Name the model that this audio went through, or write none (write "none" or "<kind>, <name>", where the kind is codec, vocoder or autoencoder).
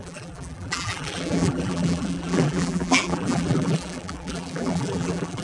vocoder, BigVGAN v2